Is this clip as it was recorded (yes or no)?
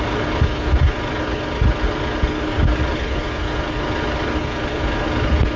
yes